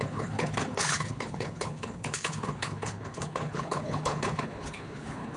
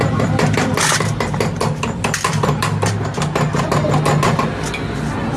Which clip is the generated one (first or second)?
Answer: first